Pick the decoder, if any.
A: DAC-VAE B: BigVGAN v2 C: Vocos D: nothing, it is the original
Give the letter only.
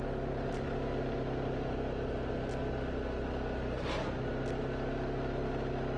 D